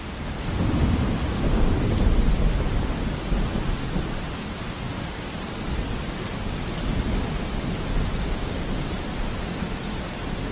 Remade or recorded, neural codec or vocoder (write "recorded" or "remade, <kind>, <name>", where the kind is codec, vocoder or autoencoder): recorded